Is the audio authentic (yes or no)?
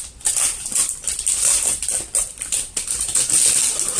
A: yes